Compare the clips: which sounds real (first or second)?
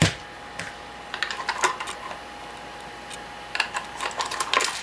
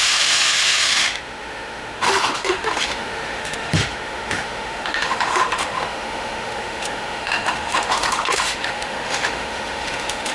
first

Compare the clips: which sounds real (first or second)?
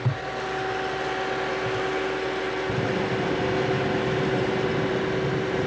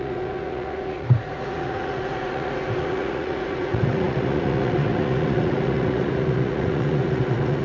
first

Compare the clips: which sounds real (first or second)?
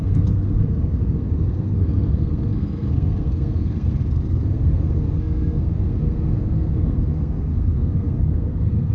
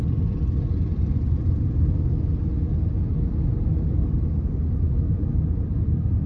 second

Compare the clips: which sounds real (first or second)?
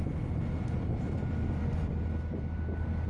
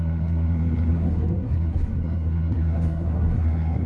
first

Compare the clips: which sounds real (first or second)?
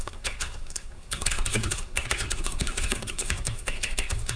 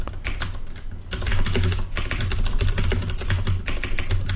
second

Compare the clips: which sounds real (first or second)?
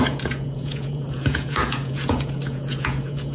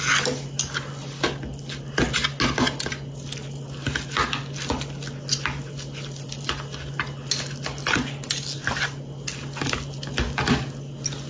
second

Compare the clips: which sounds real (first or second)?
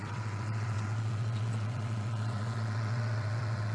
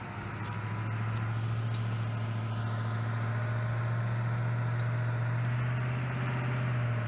second